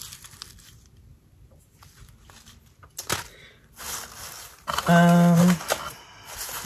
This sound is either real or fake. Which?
real